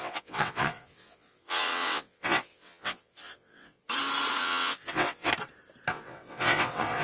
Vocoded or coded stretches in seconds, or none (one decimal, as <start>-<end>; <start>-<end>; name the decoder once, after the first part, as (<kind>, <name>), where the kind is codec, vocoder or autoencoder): 0.0-3.8 (vocoder, WaveNeXt); 4.4-5.3; 5.9-7.0